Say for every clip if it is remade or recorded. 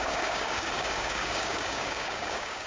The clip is remade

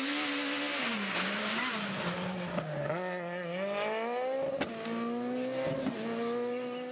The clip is recorded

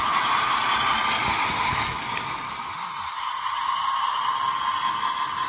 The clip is recorded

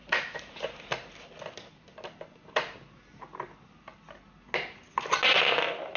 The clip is recorded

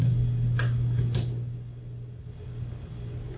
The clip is recorded